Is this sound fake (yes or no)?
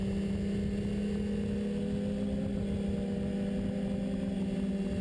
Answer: no